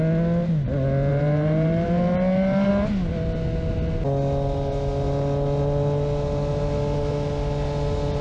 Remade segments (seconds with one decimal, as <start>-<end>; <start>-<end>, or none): 1.1-2.7